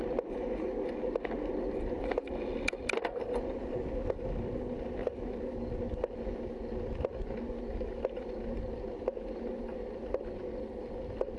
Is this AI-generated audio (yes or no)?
no